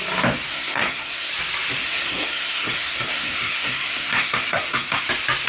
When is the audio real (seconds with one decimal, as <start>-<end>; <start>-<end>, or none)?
0.0-0.5; 1.3-1.8; 5.1-5.5